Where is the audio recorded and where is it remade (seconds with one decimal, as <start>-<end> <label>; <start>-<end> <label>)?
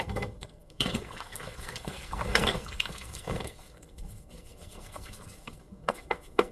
0.0-6.5 remade